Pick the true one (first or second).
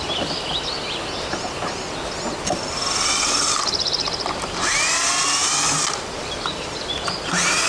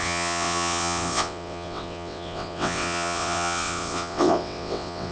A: first